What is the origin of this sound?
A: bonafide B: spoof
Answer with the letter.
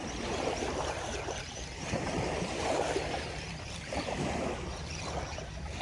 A